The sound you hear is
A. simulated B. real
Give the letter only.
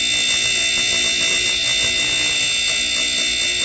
B